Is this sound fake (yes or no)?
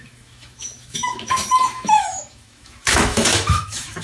yes